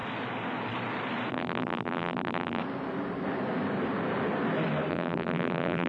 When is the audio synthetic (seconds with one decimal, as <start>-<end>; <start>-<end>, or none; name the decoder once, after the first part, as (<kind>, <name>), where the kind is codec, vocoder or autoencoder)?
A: 1.3-2.6 (vocoder, BigVGAN v2); 4.9-5.9